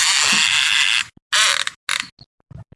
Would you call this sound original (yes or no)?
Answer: yes